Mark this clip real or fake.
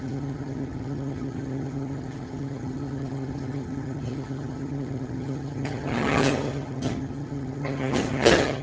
fake